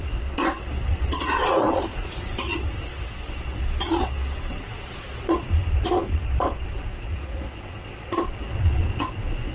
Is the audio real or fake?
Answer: fake